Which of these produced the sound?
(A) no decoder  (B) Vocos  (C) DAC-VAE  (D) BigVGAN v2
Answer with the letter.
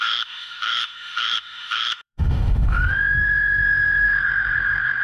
C